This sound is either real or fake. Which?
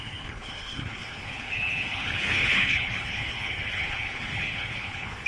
fake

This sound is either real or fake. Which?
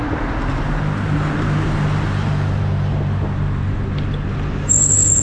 real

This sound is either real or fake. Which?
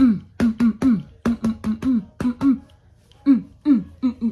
real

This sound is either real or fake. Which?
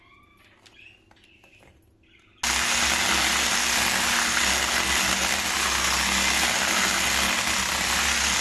real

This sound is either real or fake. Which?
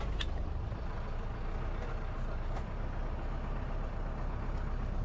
real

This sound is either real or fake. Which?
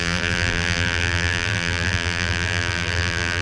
fake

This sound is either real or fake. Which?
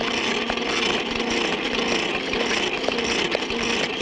real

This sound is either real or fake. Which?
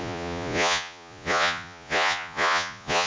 fake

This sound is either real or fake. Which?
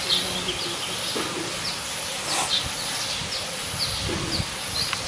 real